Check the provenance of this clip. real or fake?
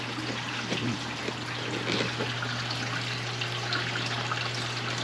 real